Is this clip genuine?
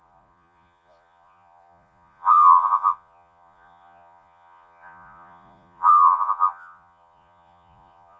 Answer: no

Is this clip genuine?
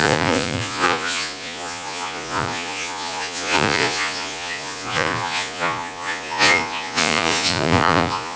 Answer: no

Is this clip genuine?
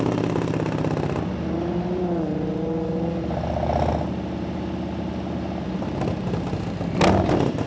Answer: yes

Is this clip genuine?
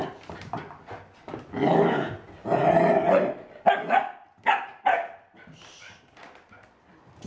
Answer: yes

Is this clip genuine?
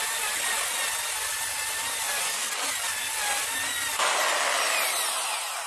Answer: yes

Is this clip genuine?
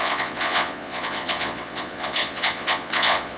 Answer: no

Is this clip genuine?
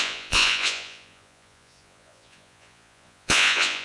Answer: no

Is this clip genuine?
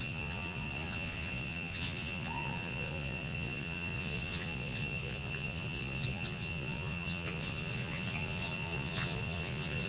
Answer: no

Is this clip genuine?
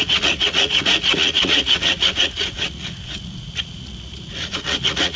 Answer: no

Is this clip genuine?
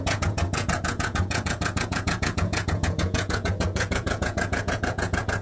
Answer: no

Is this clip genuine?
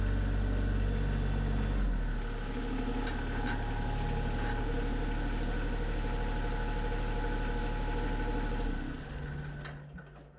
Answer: yes